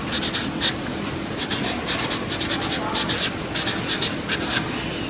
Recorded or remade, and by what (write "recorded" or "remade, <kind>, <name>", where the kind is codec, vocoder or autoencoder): recorded